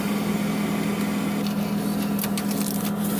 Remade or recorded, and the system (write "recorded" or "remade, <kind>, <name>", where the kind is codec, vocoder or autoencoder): recorded